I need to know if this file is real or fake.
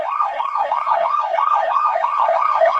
fake